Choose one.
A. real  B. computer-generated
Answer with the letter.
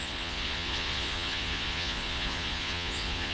B